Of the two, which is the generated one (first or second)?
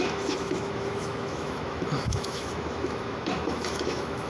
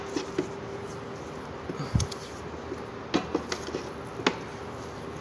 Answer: first